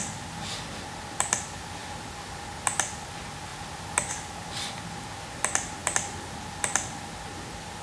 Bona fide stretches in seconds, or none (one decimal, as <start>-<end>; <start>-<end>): 0.0-7.8